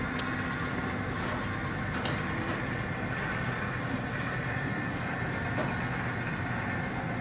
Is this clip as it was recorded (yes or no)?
yes